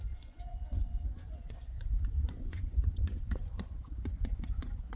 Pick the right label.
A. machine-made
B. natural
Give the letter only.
A